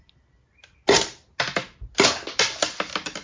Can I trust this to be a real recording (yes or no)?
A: yes